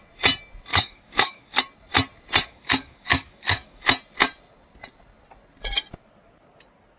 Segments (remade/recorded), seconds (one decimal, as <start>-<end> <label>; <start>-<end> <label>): 0.0-0.7 recorded; 0.7-1.6 remade; 1.6-2.4 recorded; 2.4-3.8 remade; 3.8-7.0 recorded